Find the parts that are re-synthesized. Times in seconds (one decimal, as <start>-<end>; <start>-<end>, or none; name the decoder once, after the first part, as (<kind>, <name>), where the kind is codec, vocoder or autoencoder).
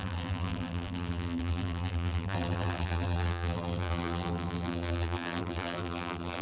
0.0-6.4 (vocoder, BigVGAN v2)